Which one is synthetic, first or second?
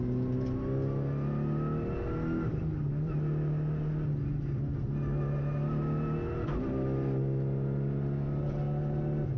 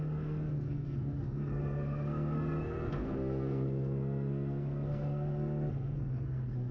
second